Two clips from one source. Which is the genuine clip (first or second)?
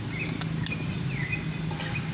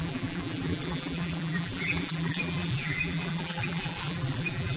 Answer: first